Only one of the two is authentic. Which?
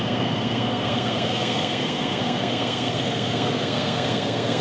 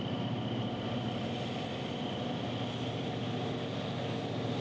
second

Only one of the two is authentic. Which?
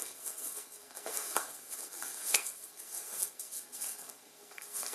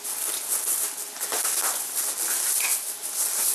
second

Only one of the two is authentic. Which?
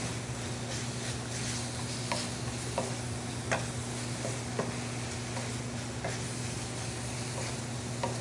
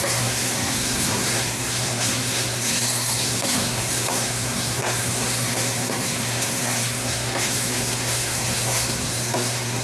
first